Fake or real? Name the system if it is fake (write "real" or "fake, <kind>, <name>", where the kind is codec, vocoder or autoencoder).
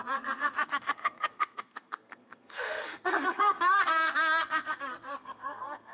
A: fake, codec, SNAC